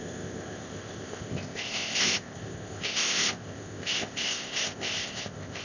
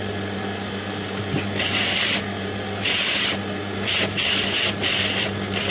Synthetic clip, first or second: first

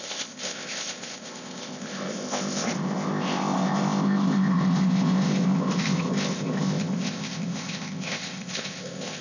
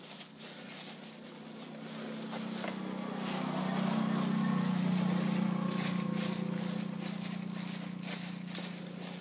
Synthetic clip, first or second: first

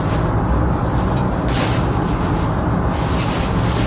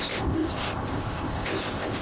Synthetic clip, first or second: second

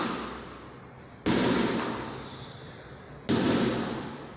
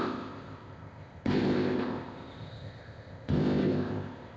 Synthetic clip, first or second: second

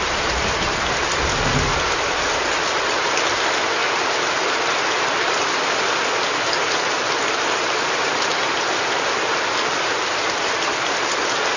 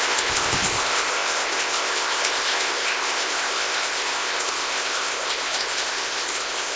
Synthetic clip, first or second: second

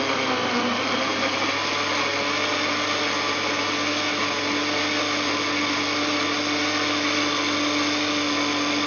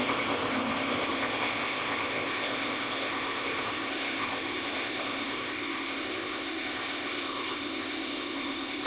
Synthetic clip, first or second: second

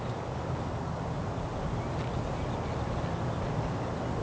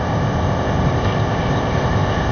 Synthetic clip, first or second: second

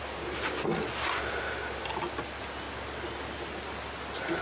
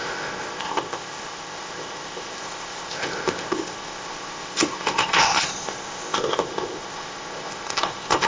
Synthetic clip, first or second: second